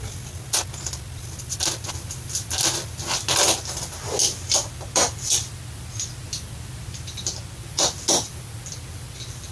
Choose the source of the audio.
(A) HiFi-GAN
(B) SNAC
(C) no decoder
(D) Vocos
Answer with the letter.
C